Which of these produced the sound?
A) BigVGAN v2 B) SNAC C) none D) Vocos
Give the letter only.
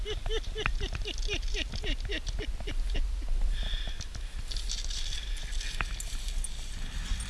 C